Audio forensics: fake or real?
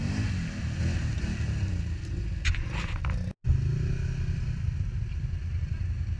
real